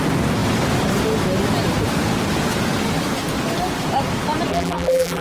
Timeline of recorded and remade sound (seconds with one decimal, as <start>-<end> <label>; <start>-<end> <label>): 0.0-4.5 recorded; 4.5-5.2 remade